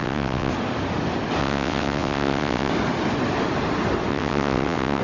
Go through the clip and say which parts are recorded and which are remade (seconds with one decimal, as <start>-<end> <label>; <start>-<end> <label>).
0.0-0.5 remade; 0.5-1.4 recorded; 1.4-2.7 remade; 2.7-4.1 recorded; 4.1-5.0 remade